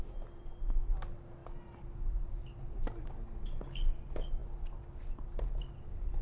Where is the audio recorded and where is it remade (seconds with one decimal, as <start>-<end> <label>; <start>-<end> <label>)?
0.0-6.2 recorded